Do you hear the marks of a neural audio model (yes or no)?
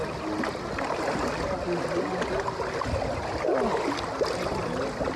no